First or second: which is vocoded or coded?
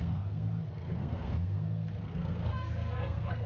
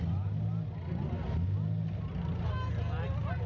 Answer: first